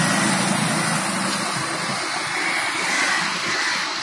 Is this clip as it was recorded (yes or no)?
yes